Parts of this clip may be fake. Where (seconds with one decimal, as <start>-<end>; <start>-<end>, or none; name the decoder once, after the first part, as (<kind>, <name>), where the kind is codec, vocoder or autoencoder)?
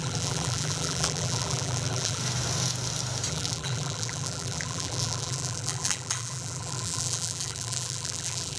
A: 0.0-2.2 (vocoder, BigVGAN v2); 3.3-8.6